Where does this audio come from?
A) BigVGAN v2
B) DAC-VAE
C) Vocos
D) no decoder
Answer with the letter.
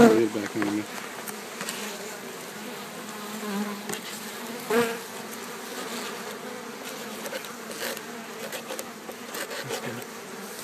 D